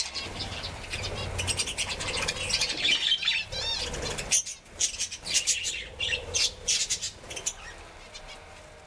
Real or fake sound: real